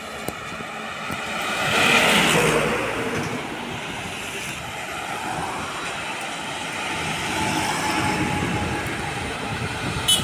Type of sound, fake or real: real